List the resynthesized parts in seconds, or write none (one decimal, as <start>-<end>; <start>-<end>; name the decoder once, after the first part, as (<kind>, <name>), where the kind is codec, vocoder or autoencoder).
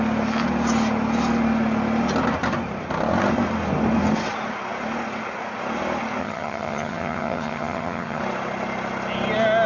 6.2-8.2 (vocoder, HiFi-GAN)